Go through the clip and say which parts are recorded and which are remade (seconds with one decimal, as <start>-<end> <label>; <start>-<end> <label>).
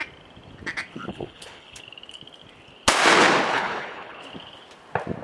0.0-1.1 recorded; 1.1-1.8 remade; 1.8-3.5 recorded; 3.5-4.2 remade; 4.2-5.2 recorded